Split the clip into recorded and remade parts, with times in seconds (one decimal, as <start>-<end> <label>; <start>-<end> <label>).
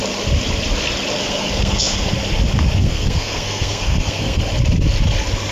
0.0-1.2 recorded; 1.2-2.1 remade; 2.1-2.8 recorded; 2.8-4.4 remade; 4.4-5.5 recorded